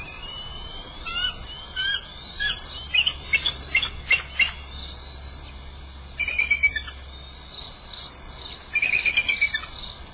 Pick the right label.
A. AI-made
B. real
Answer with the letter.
B